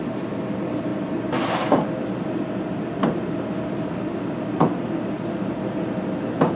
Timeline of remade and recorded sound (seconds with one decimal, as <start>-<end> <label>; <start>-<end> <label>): 0.0-6.6 recorded